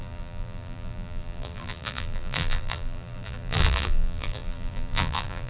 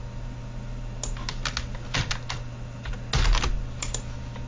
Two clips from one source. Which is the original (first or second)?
second